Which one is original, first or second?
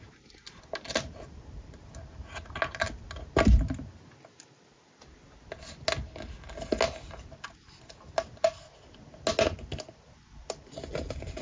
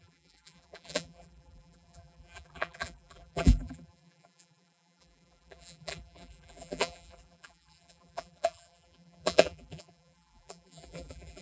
first